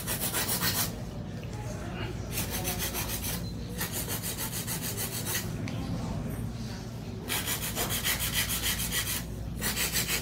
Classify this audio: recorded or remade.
recorded